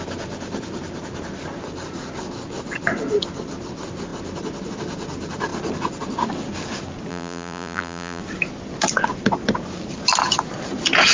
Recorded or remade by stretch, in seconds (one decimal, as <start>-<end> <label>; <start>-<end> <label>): 0.0-7.1 recorded; 7.1-8.2 remade; 8.2-11.1 recorded